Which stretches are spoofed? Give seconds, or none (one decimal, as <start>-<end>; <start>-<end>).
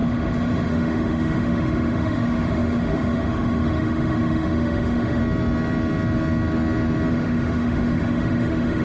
0.0-5.2; 7.1-8.8